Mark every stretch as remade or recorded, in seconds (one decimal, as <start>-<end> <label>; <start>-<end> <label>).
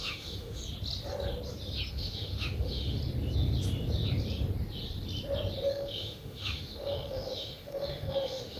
0.0-0.6 remade; 0.6-1.9 recorded; 1.9-3.0 remade; 3.0-5.7 recorded; 5.7-8.6 remade